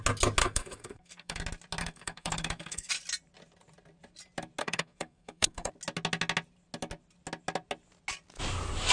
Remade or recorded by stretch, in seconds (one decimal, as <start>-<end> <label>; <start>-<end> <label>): 0.0-0.4 recorded; 0.4-1.4 remade; 1.4-1.8 recorded; 1.8-2.9 remade; 2.9-4.6 recorded; 4.6-5.7 remade; 5.7-8.9 recorded